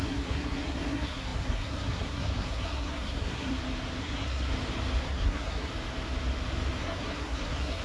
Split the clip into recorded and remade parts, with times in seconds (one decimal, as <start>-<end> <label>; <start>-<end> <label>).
0.0-3.5 remade; 3.5-4.0 recorded; 4.0-4.5 remade; 4.5-5.0 recorded; 5.0-5.7 remade; 5.7-6.8 recorded; 6.8-7.8 remade